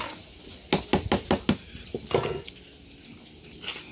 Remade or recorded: recorded